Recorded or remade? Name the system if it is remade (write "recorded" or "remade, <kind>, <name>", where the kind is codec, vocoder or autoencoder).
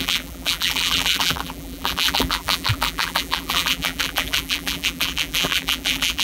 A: remade, vocoder, BigVGAN v2